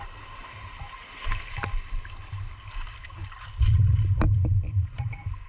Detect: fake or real real